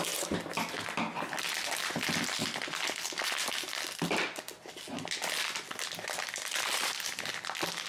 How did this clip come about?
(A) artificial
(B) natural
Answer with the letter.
B